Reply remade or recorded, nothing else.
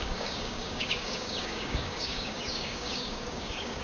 remade